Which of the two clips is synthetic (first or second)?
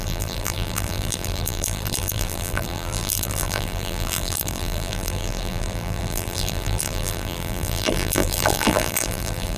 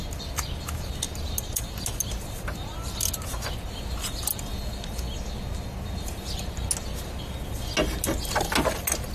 first